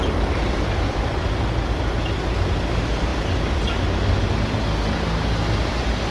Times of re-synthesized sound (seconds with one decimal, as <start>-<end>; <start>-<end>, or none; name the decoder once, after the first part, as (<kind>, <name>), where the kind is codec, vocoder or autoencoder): none